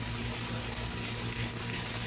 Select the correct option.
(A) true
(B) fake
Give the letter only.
A